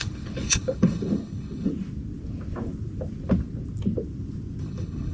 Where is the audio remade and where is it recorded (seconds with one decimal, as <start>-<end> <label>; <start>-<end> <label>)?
0.0-1.7 remade; 1.7-4.6 recorded; 4.6-5.1 remade